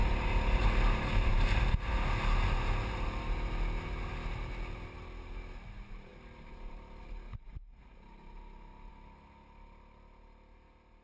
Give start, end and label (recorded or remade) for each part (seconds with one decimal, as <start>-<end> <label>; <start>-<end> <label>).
0.0-11.0 recorded